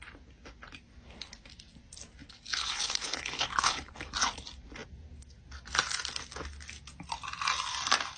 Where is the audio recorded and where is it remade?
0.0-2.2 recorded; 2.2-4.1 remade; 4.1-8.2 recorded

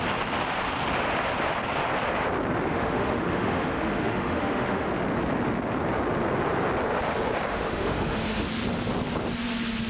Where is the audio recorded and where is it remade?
0.0-2.7 recorded; 2.7-4.9 remade; 4.9-7.5 recorded; 7.5-8.5 remade; 8.5-9.9 recorded

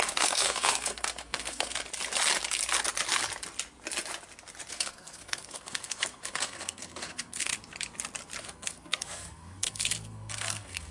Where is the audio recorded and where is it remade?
0.0-1.8 remade; 1.8-4.7 recorded; 4.7-7.5 remade; 7.5-8.4 recorded; 8.4-10.9 remade

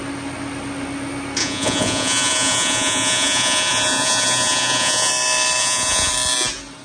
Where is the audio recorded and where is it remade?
0.0-1.4 recorded; 1.4-5.1 remade; 5.1-5.6 recorded; 5.6-6.1 remade; 6.1-6.8 recorded